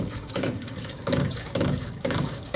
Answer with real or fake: fake